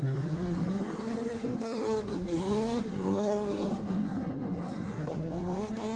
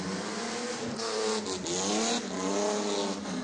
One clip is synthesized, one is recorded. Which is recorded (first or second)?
second